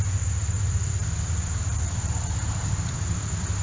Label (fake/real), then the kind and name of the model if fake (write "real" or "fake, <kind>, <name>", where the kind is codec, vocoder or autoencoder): fake, vocoder, BigVGAN v2